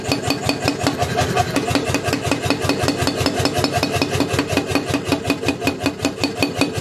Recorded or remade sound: recorded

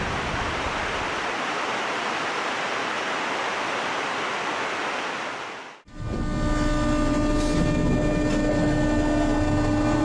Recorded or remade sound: recorded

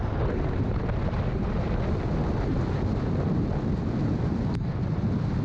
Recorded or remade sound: recorded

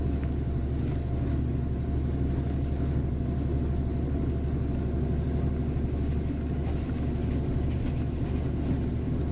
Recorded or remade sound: recorded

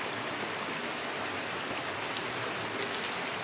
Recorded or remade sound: recorded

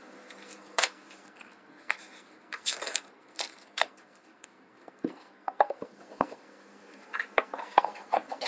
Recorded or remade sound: remade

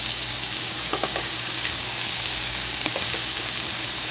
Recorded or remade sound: remade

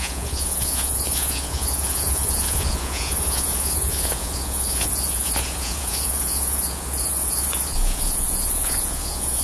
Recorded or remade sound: remade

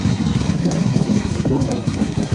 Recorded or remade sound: remade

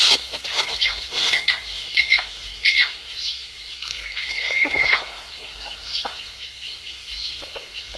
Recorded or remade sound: remade